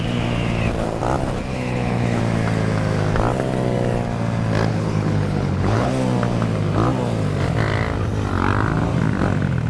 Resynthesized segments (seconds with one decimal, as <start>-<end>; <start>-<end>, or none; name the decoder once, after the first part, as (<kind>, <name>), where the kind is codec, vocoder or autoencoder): 1.5-2.2 (codec, HILCodec); 4.7-5.9